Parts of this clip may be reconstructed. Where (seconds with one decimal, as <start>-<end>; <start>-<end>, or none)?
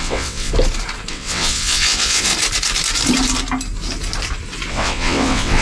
0.0-0.5; 1.1-2.3; 4.7-5.6